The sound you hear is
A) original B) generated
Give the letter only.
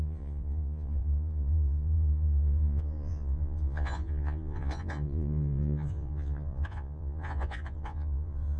B